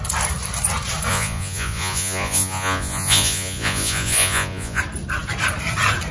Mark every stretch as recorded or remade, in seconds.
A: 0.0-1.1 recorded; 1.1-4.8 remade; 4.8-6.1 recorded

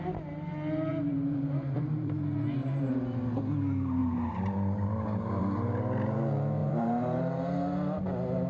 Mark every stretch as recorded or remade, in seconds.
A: 0.0-0.9 recorded; 0.9-2.9 remade; 2.9-6.6 recorded; 6.6-7.2 remade; 7.2-8.5 recorded

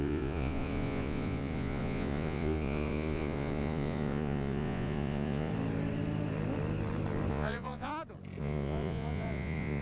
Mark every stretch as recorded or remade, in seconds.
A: 0.0-5.5 remade; 5.5-7.3 recorded; 7.3-7.9 remade; 7.9-8.4 recorded; 8.4-9.8 remade

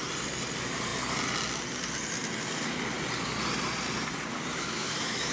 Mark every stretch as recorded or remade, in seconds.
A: 0.0-4.5 recorded; 4.5-5.3 remade

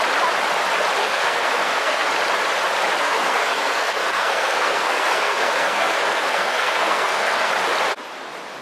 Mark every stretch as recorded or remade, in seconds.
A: 0.0-1.0 recorded; 1.0-2.1 remade; 2.1-3.0 recorded; 3.0-7.5 remade; 7.5-8.6 recorded

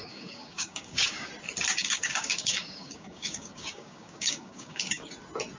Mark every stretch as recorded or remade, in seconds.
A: 0.0-1.3 remade; 1.3-1.8 recorded; 1.8-5.1 remade; 5.1-5.6 recorded